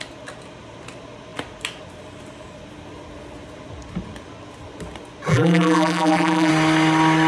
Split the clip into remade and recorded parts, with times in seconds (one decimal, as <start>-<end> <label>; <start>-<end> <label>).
0.0-5.3 recorded; 5.3-6.5 remade; 6.5-7.3 recorded